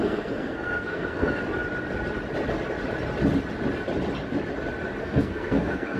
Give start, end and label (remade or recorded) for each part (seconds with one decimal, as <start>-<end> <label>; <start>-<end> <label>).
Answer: 0.0-1.4 remade; 1.4-5.0 recorded; 5.0-6.0 remade